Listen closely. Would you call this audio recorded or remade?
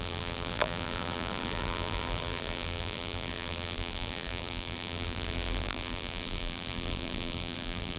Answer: remade